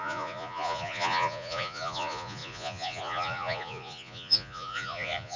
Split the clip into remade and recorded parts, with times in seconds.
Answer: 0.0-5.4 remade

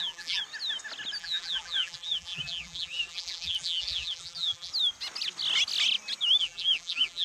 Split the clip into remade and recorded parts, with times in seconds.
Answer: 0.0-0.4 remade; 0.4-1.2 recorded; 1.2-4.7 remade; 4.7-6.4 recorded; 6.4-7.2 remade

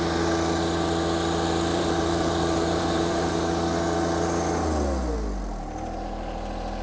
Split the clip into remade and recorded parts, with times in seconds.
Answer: 0.0-1.7 recorded; 1.7-3.4 remade; 3.4-6.8 recorded